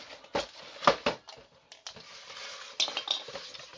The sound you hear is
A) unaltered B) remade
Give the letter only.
A